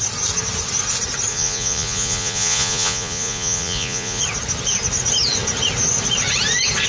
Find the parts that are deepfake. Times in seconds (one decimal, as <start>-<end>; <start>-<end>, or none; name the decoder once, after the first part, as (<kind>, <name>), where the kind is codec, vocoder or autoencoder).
1.3-4.2 (vocoder, Vocos)